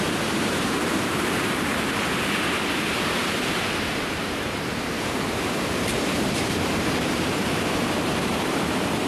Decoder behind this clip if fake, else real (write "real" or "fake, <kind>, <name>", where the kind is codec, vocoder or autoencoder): fake, vocoder, BigVGAN v2